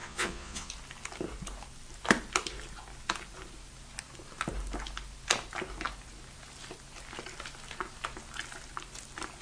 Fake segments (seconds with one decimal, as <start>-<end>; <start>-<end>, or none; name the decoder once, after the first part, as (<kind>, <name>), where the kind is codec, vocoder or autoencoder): 0.0-0.7 (vocoder, Vocos)